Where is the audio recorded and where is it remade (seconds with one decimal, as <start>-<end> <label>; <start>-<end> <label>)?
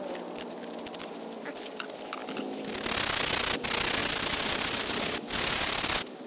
0.0-4.0 recorded; 4.0-4.9 remade; 4.9-6.3 recorded